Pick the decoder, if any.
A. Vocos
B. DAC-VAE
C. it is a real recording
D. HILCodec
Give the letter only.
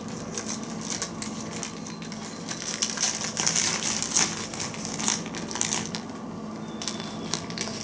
C